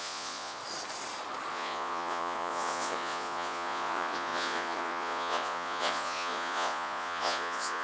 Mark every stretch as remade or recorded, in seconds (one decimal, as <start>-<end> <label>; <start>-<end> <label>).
0.0-0.6 remade; 0.6-1.5 recorded; 1.5-7.8 remade